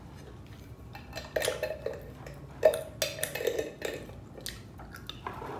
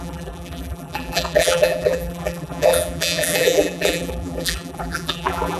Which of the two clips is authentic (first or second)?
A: first